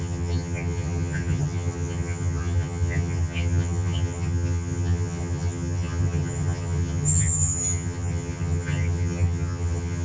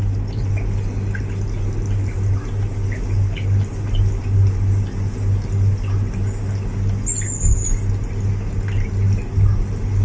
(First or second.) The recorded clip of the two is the second